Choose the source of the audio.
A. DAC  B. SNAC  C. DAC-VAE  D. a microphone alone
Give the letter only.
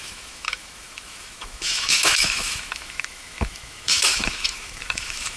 C